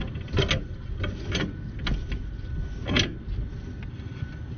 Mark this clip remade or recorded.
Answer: recorded